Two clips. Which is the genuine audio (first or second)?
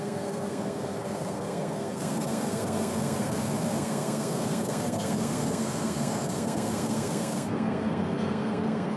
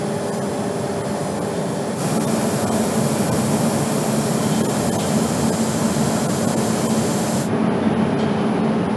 second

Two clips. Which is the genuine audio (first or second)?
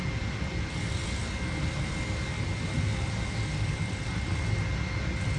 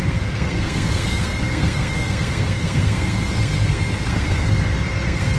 first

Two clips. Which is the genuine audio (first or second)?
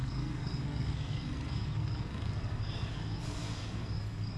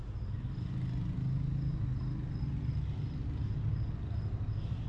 second